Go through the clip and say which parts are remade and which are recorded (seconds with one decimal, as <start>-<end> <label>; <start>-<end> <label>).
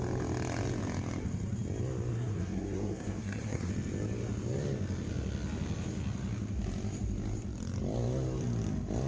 0.0-2.1 recorded; 2.1-3.7 remade; 3.7-9.1 recorded